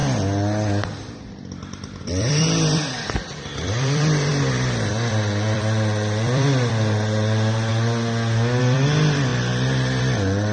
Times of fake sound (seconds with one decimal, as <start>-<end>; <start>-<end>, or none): 2.0-4.3; 4.9-7.7; 8.6-10.5